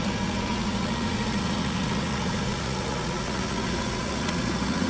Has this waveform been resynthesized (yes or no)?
yes